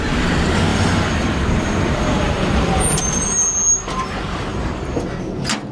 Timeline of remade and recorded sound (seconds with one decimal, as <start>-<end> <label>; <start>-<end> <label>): 0.0-0.7 recorded; 0.7-3.0 remade; 3.0-4.5 recorded; 4.5-5.0 remade; 5.0-5.7 recorded